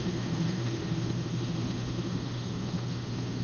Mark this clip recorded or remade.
remade